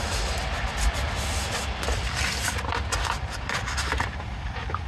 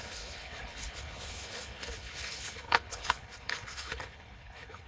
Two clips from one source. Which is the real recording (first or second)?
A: first